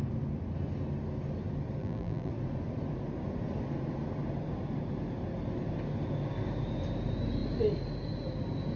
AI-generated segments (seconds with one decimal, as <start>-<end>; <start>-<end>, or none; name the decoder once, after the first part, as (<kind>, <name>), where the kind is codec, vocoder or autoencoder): 1.8-2.3 (vocoder, BigVGAN v2)